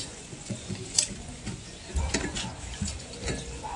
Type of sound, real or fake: fake